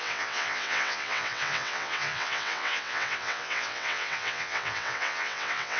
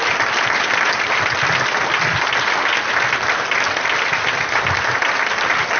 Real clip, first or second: second